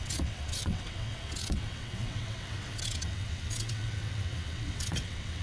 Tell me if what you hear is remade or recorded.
remade